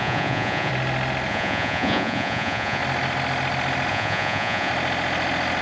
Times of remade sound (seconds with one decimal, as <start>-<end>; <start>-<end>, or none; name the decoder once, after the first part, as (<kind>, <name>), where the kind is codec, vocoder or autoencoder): 0.0-0.7 (vocoder, Vocos); 1.3-2.8; 3.9-4.7